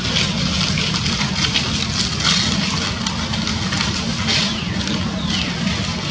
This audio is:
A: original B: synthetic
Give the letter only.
A